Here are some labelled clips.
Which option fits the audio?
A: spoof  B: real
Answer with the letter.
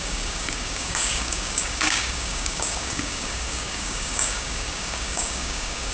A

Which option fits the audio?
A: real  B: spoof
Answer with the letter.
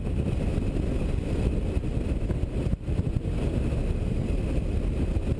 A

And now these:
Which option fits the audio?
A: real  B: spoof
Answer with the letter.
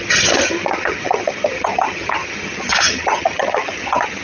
B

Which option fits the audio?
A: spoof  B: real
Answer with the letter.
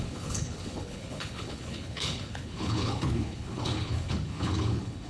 A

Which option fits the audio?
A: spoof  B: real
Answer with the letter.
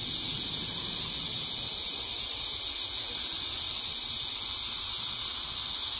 B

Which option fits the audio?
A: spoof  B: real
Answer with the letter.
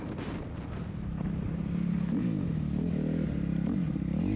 B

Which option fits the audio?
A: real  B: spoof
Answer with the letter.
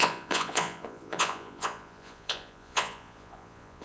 B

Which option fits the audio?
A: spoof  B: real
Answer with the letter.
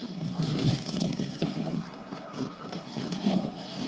A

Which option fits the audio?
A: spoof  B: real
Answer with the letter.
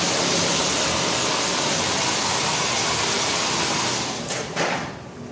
B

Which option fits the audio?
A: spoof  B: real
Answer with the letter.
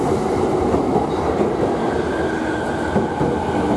B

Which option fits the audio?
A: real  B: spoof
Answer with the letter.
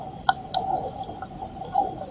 A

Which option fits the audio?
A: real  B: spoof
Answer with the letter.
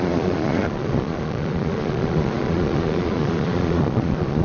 B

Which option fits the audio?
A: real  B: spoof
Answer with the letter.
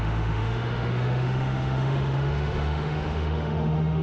B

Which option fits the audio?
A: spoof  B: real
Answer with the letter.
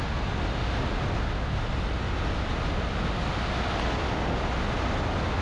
B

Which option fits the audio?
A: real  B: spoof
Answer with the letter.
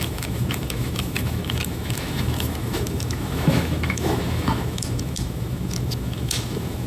B